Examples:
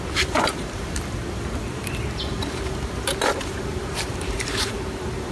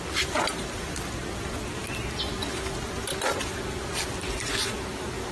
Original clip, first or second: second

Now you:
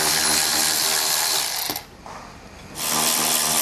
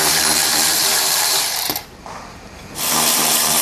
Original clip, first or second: first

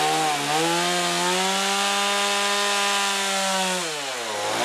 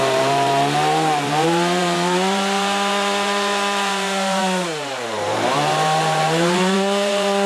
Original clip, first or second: first